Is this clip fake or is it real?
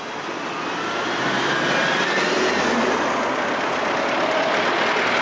real